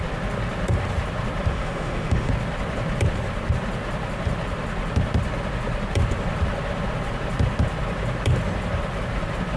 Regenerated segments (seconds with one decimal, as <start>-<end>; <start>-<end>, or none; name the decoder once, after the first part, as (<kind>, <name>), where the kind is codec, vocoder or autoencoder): 1.5-2.3 (autoencoder, DAC-VAE)